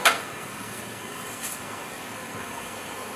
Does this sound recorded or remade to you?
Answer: remade